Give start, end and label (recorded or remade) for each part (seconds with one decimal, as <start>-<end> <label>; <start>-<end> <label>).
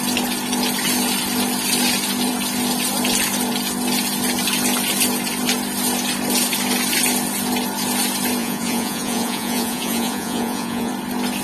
0.0-8.4 recorded; 8.4-10.9 remade; 10.9-11.4 recorded